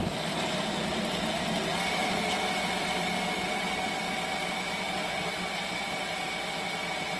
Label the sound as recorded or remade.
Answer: recorded